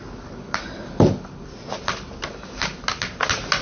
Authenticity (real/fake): real